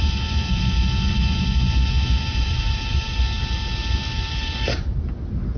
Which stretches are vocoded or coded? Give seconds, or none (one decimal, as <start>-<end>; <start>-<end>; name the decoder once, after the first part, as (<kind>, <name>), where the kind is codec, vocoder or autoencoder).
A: 2.3-3.2 (vocoder, BigVGAN v2)